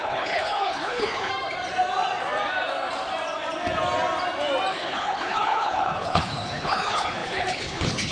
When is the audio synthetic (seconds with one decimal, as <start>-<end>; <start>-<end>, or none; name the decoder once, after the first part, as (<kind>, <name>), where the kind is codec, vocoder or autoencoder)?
0.0-1.3 (codec, HILCodec); 4.7-8.1